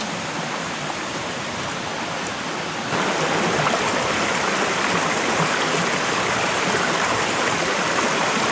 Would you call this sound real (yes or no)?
yes